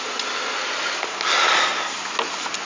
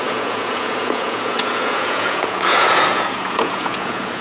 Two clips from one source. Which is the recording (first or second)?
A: first